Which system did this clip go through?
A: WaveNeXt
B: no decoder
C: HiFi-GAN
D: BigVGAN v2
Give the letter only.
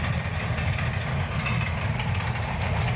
B